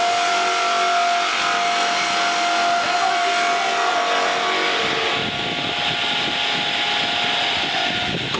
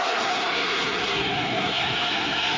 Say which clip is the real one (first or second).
first